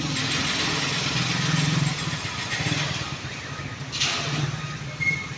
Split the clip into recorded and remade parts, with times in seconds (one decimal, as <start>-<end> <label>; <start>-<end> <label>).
0.0-0.4 recorded; 0.4-3.6 remade; 3.6-5.4 recorded